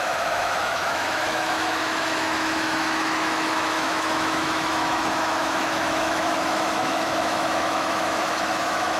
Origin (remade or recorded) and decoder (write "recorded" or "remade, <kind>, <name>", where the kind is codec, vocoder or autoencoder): remade, autoencoder, DAC-VAE